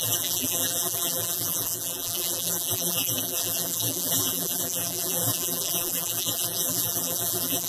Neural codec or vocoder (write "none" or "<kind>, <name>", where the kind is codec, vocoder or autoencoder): vocoder, BigVGAN v2